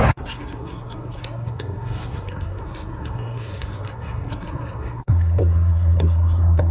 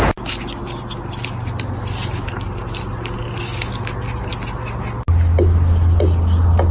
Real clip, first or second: second